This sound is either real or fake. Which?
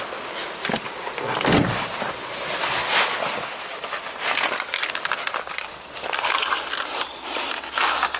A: real